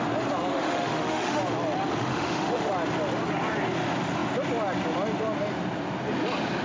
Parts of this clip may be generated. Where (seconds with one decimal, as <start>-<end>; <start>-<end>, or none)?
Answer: 0.5-1.4; 2.1-2.7